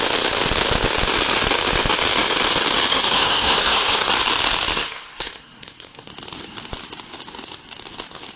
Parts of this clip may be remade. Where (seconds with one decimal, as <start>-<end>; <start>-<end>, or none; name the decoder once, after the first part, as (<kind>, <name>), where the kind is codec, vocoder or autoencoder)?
2.9-4.1 (codec, SNAC); 4.7-6.1